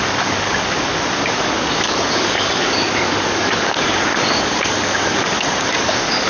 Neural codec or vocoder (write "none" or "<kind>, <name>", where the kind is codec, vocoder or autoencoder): codec, DAC